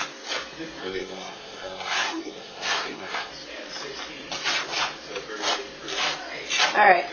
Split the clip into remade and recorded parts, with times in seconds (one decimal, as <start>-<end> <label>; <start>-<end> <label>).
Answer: 0.0-0.8 recorded; 0.8-3.3 remade; 3.3-7.1 recorded